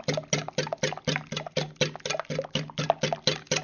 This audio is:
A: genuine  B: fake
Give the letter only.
A